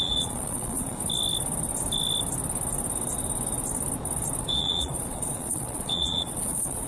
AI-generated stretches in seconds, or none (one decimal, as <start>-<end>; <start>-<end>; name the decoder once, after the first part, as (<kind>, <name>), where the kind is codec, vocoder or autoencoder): 0.0-1.0 (vocoder, Vocos); 4.4-6.9